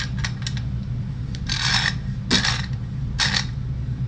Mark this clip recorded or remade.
recorded